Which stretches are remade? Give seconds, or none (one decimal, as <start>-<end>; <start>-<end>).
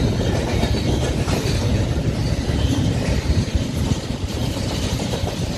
1.6-3.6; 4.4-5.1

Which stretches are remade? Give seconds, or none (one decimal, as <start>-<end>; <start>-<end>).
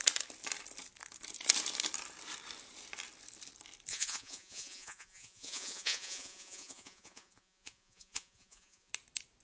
3.9-8.9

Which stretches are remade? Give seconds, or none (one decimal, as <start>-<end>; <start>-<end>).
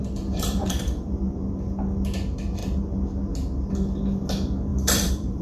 0.0-1.1; 4.7-5.4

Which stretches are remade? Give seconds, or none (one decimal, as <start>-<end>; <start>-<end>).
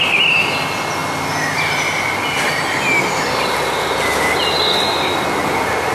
none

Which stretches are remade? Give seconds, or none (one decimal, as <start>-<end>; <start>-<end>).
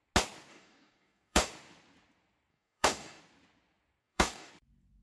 0.5-1.5; 2.5-3.2; 4.0-4.5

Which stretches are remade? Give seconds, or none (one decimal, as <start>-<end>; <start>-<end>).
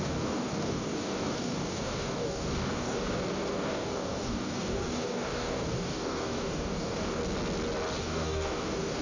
0.0-7.2; 8.0-9.0